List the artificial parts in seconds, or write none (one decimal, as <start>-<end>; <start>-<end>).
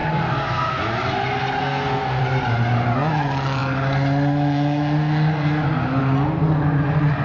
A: 0.0-0.8; 1.6-2.2